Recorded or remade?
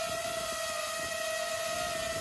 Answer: recorded